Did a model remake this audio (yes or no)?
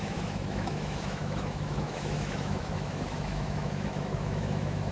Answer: yes